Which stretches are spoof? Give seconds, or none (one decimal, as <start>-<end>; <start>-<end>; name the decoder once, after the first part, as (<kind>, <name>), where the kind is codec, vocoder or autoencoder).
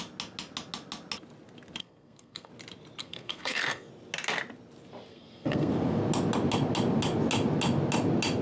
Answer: 1.8-2.5 (codec, SNAC); 3.0-3.9; 5.1-5.7